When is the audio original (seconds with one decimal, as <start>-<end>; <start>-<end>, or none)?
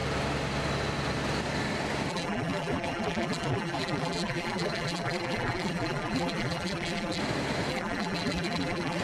0.0-2.1; 7.2-7.7